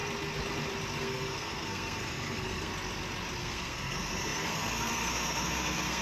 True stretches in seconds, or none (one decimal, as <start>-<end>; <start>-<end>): 0.0-1.0; 2.7-3.4